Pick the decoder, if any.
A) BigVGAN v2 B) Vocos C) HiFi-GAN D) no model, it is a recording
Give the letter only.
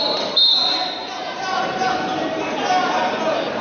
D